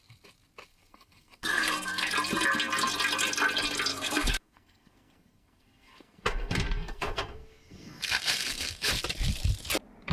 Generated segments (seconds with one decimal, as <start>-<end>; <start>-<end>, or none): 0.7-2.1; 3.9-8.9